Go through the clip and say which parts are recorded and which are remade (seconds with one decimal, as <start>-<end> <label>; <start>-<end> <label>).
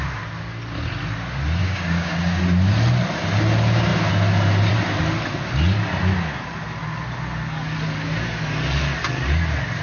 0.0-1.6 recorded; 1.6-2.4 remade; 2.4-9.8 recorded